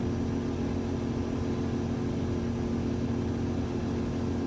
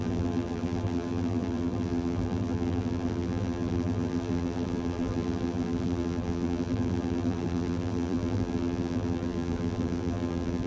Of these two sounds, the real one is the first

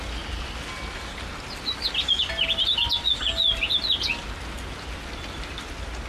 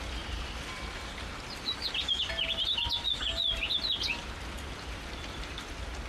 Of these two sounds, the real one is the first